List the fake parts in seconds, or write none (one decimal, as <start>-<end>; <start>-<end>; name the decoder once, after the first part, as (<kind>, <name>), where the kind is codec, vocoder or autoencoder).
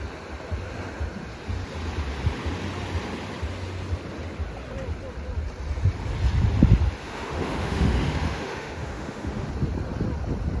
7.0-9.5 (autoencoder, DAC-VAE)